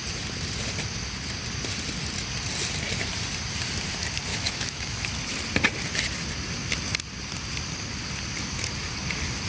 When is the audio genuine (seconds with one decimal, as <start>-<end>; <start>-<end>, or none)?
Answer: 0.0-4.3; 5.1-9.5